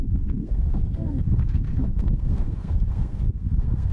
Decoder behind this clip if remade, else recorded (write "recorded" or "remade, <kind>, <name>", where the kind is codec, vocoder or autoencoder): remade, codec, SNAC